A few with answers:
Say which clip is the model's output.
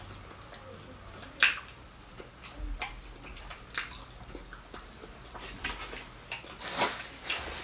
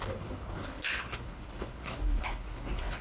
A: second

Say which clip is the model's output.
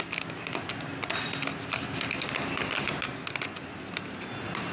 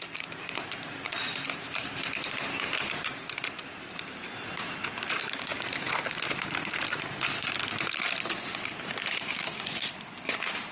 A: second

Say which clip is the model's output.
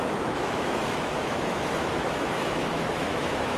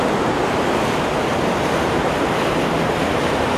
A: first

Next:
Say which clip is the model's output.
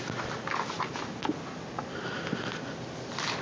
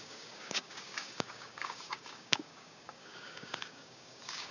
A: second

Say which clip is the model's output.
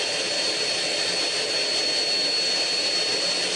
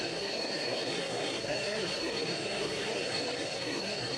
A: second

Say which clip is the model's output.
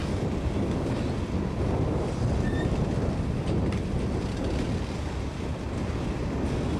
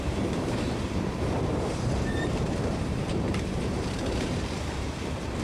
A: second